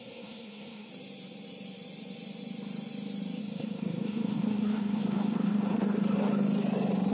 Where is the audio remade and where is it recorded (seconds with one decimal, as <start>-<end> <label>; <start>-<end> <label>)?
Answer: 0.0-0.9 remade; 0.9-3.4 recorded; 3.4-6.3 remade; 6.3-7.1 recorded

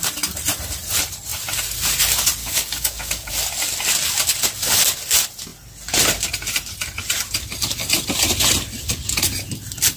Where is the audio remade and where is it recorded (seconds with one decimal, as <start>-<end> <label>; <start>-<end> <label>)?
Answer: 0.0-2.4 recorded; 2.4-3.3 remade; 3.3-10.0 recorded

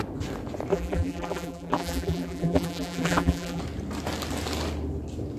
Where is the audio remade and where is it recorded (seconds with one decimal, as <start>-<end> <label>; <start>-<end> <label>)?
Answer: 0.0-0.7 recorded; 0.7-3.6 remade; 3.6-5.4 recorded

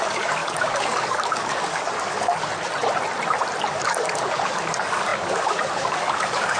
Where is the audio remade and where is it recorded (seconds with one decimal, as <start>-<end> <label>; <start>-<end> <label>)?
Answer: 0.0-2.5 remade; 2.5-3.7 recorded; 3.7-6.6 remade

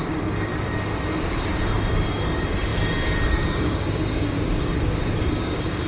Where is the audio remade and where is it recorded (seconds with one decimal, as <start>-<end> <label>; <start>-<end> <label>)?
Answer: 0.0-0.5 remade; 0.5-1.9 recorded; 1.9-5.9 remade

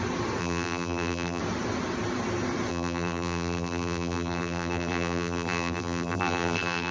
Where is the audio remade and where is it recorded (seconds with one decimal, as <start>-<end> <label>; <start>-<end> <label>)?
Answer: 0.0-0.4 recorded; 0.4-1.4 remade; 1.4-2.7 recorded; 2.7-6.9 remade

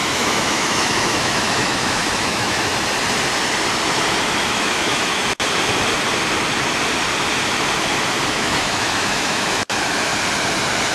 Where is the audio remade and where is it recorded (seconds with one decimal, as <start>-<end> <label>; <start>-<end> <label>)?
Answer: 0.0-2.7 remade; 2.7-4.5 recorded; 4.5-5.2 remade; 5.2-8.3 recorded; 8.3-10.1 remade; 10.1-10.9 recorded

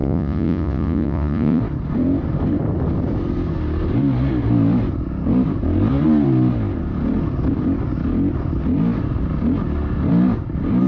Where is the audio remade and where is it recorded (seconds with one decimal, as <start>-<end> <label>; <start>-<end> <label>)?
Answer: 0.0-1.6 remade; 1.6-10.9 recorded